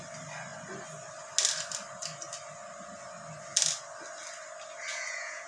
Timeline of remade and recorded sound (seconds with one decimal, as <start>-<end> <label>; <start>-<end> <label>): 0.0-4.9 recorded; 4.9-5.5 remade